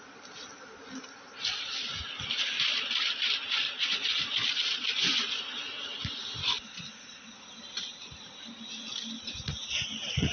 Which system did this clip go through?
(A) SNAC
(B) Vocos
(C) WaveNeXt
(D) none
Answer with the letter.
D